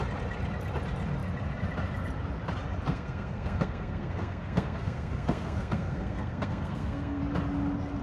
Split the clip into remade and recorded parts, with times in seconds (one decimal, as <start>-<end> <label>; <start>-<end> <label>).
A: 0.0-2.9 recorded; 2.9-7.2 remade; 7.2-8.0 recorded